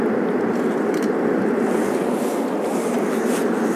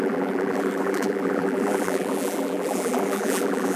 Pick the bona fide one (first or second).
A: first